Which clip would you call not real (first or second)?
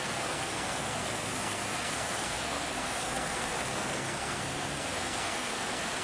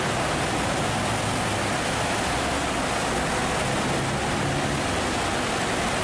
first